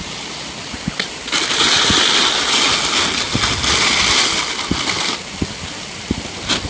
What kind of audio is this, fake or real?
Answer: real